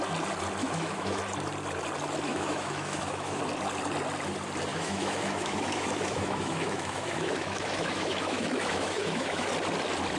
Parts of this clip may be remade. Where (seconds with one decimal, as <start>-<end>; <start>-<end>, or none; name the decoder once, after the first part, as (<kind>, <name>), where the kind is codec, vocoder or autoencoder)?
0.6-1.2 (autoencoder, DAC-VAE); 2.3-3.4; 4.7-9.5